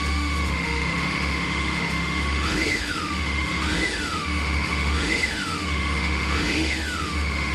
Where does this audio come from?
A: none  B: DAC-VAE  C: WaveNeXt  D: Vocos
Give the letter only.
B